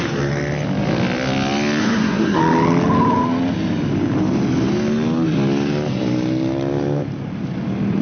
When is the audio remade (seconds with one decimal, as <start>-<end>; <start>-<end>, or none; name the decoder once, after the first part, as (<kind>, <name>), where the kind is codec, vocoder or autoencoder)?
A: 1.8-2.4 (codec, SNAC)